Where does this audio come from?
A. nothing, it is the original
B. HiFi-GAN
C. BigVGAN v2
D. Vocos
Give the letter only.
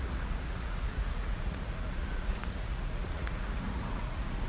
D